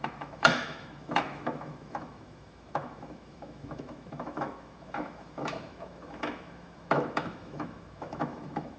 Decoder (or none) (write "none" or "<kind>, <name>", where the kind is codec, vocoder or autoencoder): autoencoder, DAC-VAE